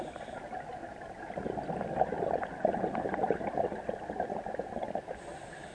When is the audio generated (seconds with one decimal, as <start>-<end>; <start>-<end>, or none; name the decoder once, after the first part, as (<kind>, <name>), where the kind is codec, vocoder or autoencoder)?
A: none